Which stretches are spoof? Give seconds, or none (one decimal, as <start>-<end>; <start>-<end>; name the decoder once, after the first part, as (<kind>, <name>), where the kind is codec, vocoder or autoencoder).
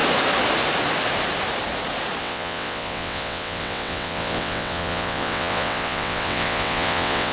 2.2-7.3 (vocoder, WaveNeXt)